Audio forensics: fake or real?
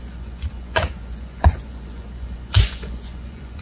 fake